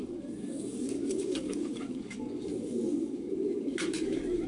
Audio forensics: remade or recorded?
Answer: remade